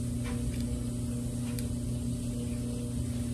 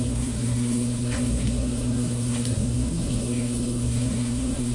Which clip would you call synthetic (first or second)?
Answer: second